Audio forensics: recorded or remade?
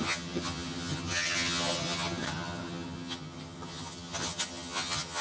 remade